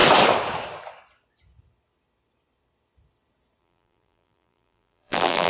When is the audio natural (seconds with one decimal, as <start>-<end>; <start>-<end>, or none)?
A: 0.0-3.6